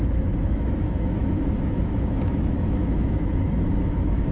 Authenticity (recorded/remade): remade